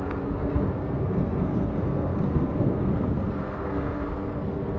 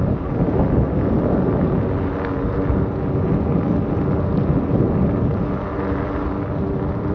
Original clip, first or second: second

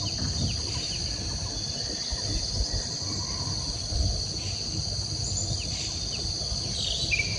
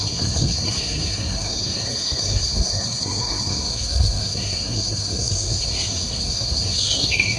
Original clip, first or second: first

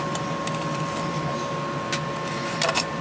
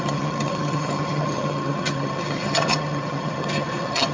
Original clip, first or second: first